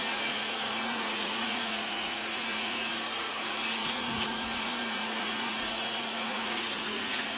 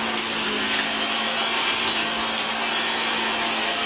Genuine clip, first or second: second